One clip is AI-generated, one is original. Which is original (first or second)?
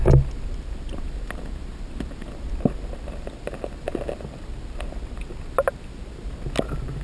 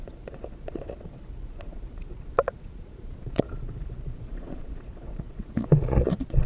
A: first